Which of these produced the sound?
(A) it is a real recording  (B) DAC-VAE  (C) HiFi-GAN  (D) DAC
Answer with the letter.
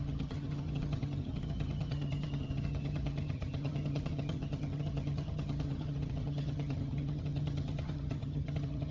C